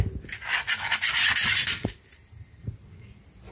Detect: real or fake real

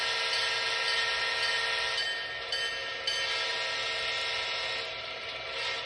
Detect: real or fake real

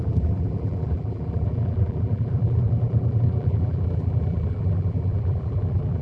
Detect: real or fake fake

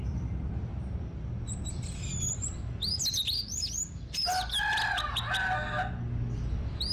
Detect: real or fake real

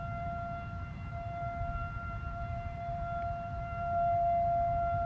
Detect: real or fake fake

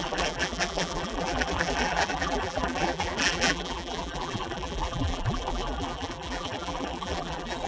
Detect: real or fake fake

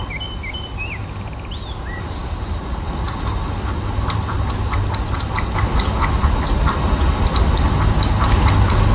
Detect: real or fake real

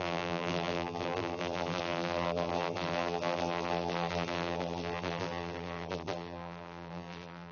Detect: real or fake fake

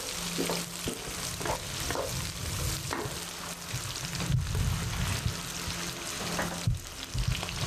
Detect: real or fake real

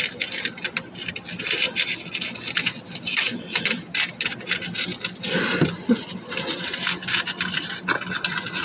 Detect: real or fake real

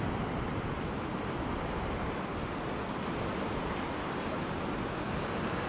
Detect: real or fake fake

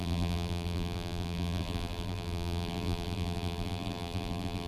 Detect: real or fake fake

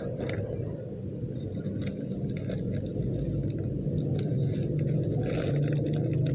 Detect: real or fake real